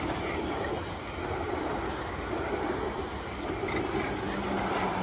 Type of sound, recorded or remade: recorded